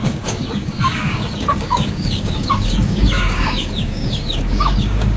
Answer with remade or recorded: remade